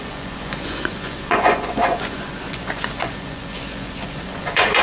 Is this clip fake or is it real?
fake